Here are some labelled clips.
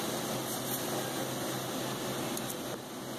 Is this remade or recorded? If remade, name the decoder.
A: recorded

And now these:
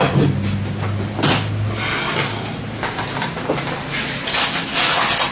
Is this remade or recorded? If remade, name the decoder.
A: recorded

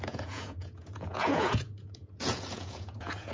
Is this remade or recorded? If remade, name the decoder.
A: remade, vocoder, Vocos